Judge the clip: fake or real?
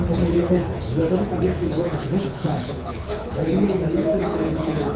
fake